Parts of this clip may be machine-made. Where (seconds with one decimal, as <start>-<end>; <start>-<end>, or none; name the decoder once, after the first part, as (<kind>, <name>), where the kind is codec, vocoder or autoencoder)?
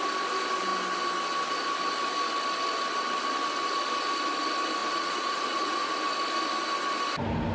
4.8-5.9 (vocoder, Vocos)